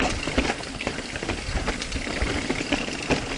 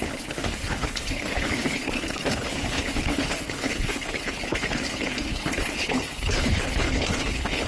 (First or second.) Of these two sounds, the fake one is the second